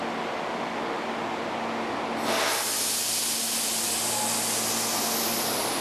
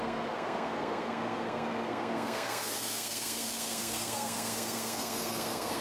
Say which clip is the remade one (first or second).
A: second